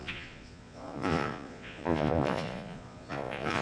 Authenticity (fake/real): fake